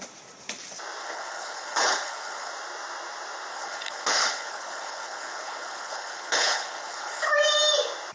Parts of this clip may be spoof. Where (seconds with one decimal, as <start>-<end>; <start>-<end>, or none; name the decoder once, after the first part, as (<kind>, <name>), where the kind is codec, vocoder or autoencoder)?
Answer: 1.0-2.5 (codec, HILCodec); 3.5-7.3